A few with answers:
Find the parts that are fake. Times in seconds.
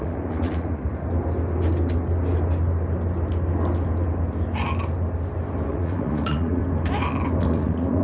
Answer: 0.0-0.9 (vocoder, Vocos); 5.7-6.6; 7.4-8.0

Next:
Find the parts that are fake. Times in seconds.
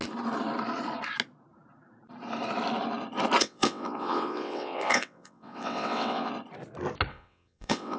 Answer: 3.4-6.3 (vocoder, WaveNeXt); 7.1-8.0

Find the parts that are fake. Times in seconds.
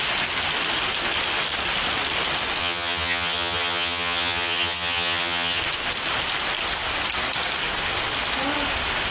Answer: 2.6-5.6 (vocoder, HiFi-GAN)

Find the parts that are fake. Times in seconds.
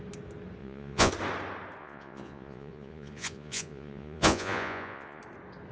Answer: 0.6-1.1 (vocoder, Vocos); 1.8-5.2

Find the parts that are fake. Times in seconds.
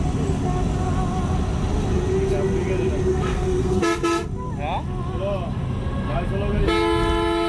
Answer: 3.1-3.8 (codec, SNAC)